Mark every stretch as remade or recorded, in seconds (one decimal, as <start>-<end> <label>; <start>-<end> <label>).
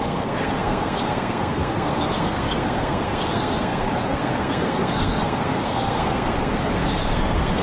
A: 0.0-7.6 remade